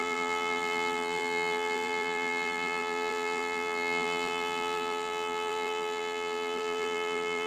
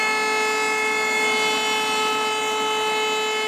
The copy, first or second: first